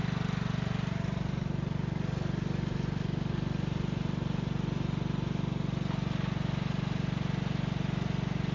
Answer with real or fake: real